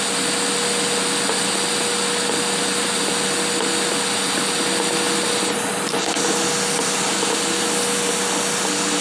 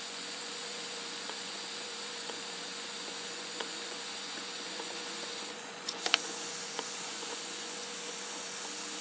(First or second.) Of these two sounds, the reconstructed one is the second